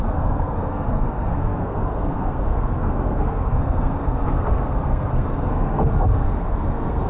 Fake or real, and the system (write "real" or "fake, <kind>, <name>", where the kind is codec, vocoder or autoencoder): fake, codec, SNAC